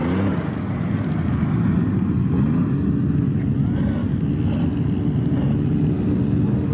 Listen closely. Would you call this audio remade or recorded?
recorded